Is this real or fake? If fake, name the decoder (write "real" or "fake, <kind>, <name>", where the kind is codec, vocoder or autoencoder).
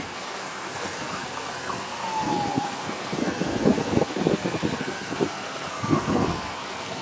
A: fake, codec, SNAC